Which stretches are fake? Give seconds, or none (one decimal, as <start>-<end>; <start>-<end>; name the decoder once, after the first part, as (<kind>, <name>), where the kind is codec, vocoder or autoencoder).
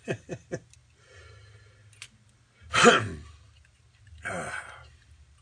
none